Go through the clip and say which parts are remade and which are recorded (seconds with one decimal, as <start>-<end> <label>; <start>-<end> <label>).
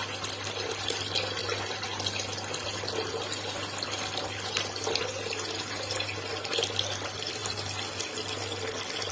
0.0-9.1 recorded